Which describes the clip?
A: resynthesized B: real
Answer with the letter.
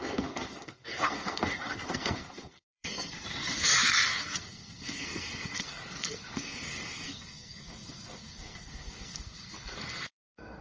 A